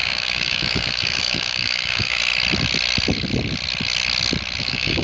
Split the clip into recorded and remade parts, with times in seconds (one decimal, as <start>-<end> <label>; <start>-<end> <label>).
0.0-2.2 remade; 2.2-4.6 recorded; 4.6-5.0 remade